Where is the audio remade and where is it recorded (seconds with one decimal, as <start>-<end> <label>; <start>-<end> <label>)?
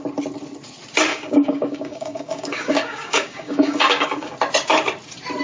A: 0.0-1.1 recorded; 1.1-4.3 remade; 4.3-5.4 recorded